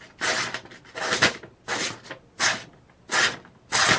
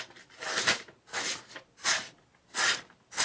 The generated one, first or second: second